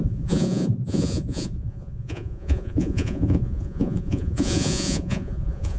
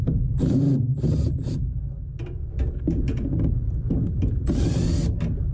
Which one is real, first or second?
second